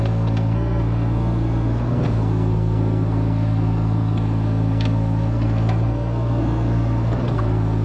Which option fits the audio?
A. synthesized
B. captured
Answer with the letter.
A